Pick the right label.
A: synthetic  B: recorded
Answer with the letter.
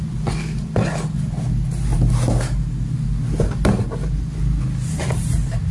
B